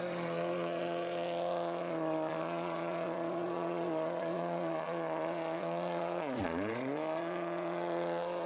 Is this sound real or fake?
fake